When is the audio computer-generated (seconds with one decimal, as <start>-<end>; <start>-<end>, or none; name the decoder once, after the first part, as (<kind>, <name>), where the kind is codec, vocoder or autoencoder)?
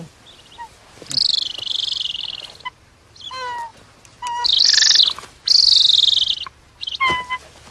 none